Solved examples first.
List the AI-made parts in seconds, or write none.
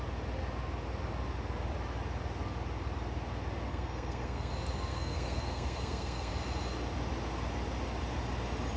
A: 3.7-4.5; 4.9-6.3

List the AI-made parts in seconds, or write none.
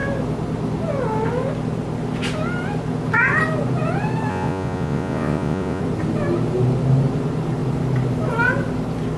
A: 4.3-5.8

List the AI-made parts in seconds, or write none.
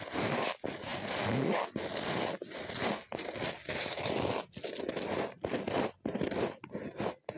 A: none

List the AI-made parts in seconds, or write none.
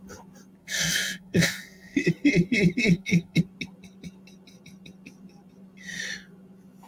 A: 0.6-2.1; 2.9-3.4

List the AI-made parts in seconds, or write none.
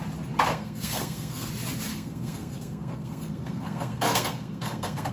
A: 0.5-1.5; 1.9-5.1